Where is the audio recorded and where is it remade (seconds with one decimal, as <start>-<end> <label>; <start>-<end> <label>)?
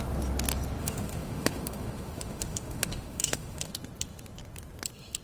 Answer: 0.0-0.8 recorded; 0.8-3.7 remade; 3.7-5.2 recorded